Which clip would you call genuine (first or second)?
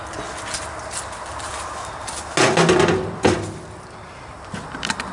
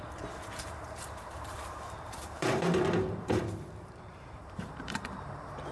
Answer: first